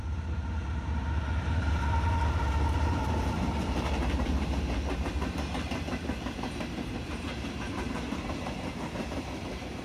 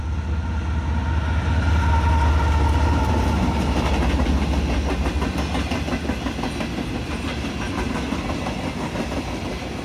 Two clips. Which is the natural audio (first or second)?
second